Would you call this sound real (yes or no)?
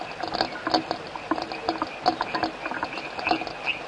yes